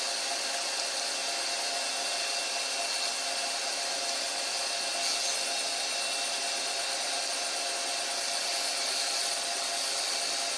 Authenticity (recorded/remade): recorded